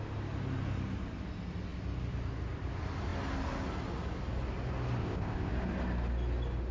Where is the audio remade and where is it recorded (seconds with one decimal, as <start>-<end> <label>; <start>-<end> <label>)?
0.0-5.0 recorded; 5.0-5.5 remade; 5.5-6.7 recorded